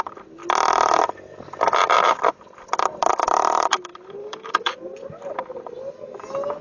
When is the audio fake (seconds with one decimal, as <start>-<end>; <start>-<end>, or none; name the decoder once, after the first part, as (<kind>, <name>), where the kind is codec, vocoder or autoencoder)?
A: 4.2-4.7 (autoencoder, DAC-VAE)

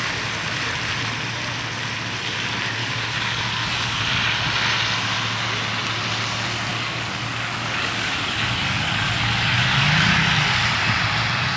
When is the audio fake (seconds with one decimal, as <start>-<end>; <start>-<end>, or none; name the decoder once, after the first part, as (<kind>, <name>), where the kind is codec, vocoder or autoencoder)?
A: 2.8-4.0 (codec, DAC); 6.7-10.2

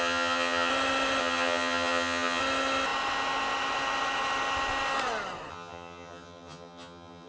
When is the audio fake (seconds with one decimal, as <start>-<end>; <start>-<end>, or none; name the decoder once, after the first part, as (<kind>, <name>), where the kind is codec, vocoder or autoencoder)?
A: 0.0-0.7 (vocoder, HiFi-GAN); 1.2-2.4; 5.5-7.3